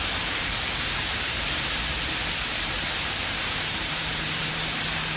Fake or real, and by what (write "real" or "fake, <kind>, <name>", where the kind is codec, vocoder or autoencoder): fake, vocoder, BigVGAN v2